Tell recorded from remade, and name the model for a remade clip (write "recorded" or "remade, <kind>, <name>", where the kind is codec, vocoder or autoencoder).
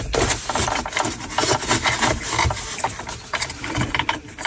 recorded